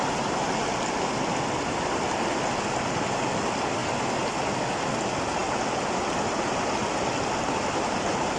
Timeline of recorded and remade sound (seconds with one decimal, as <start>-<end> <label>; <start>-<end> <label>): 0.0-8.4 recorded